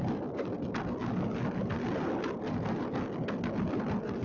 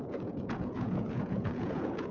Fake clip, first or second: second